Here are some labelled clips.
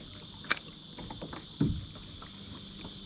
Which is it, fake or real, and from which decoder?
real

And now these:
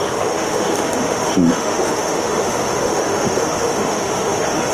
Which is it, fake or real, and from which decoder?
fake, autoencoder, DAC-VAE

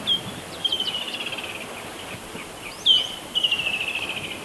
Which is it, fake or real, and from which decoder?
real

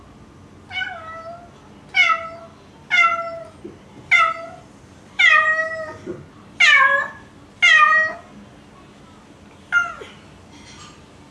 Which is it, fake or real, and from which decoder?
real